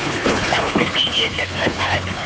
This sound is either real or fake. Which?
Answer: fake